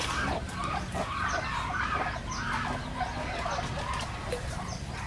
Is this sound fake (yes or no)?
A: no